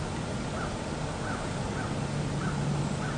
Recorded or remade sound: recorded